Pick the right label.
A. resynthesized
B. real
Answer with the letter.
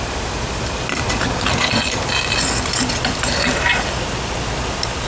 B